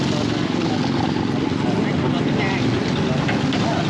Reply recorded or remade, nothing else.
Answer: recorded